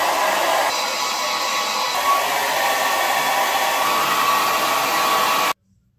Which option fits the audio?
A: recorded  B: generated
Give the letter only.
A